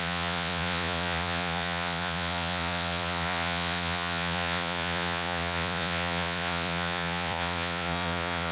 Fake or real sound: fake